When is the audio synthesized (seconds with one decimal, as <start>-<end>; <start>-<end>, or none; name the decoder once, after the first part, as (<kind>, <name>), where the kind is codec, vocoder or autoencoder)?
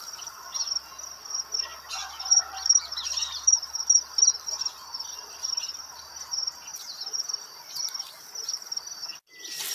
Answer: none